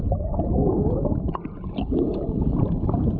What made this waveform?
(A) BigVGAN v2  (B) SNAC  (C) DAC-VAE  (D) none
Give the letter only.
D